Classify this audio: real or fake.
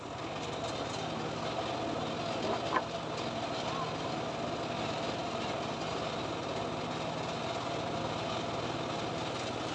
real